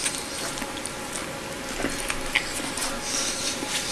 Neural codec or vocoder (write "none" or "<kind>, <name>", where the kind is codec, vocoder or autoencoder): none